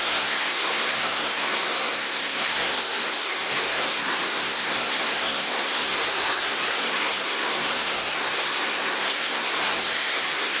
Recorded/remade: remade